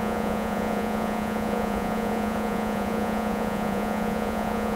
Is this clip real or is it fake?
fake